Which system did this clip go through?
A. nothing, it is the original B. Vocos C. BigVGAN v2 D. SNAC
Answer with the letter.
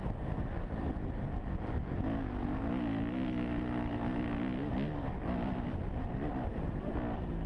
A